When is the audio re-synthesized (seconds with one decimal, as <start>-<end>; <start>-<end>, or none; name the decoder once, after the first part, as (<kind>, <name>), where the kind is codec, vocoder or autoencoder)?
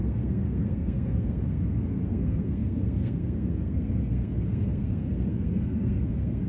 0.0-6.5 (codec, SNAC)